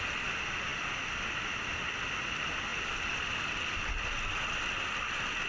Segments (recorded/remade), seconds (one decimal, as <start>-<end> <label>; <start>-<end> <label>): 0.0-5.5 recorded